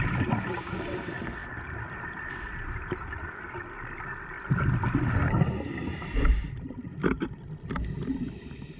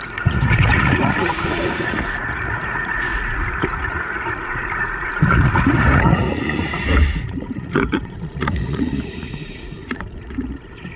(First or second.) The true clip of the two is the first